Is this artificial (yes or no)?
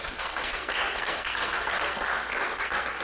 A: yes